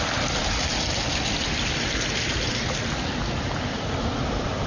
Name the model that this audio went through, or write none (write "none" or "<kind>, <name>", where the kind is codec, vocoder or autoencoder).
none